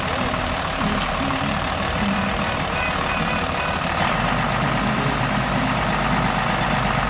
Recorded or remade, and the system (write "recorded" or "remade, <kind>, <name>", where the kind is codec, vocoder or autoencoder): remade, vocoder, BigVGAN v2